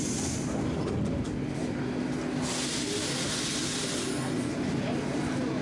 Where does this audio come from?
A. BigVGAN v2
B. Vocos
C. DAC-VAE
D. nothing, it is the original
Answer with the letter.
D